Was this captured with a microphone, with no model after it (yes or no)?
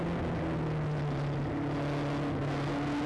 yes